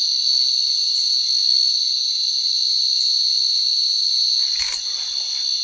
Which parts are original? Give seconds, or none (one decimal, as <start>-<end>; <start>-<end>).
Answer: 0.0-5.6

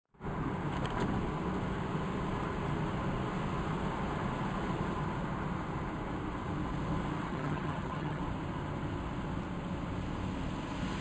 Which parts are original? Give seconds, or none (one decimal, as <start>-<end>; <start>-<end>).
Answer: 0.0-7.3; 8.2-11.0

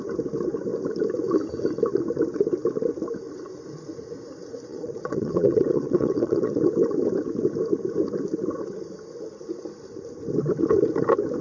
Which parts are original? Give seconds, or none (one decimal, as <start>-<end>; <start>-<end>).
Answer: 0.0-4.7; 6.6-11.4

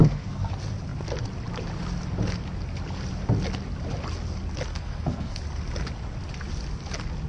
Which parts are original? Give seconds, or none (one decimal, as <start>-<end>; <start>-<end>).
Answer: 0.5-4.7; 5.4-7.3